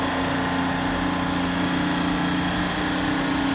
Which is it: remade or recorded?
recorded